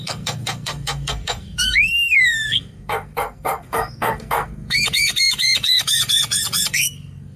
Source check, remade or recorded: remade